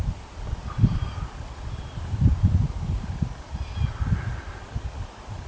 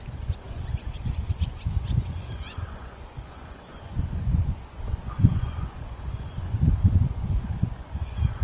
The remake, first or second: second